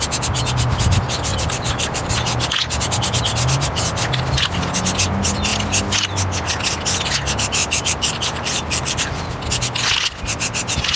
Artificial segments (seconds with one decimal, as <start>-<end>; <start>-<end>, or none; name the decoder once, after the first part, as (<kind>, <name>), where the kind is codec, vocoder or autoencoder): 1.3-2.1 (vocoder, BigVGAN v2); 7.6-9.4